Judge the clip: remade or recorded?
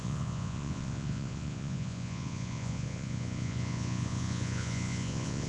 remade